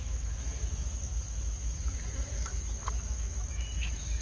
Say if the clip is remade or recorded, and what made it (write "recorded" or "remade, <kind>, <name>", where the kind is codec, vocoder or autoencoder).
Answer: remade, autoencoder, DAC-VAE